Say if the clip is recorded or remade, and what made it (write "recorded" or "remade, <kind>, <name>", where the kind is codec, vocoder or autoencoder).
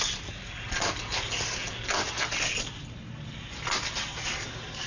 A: recorded